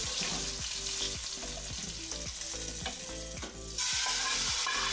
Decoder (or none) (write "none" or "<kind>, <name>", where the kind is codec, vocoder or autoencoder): none